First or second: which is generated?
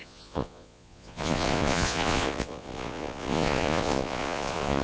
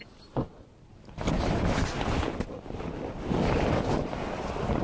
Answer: first